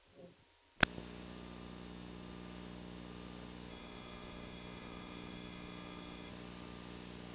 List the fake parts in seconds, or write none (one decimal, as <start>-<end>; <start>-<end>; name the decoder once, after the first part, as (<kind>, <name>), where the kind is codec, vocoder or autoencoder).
3.7-6.3 (autoencoder, DAC-VAE)